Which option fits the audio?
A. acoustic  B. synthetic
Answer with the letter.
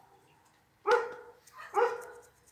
A